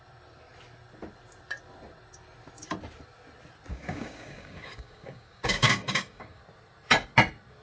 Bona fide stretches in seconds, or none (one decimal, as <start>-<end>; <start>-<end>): 0.0-3.7; 6.4-7.6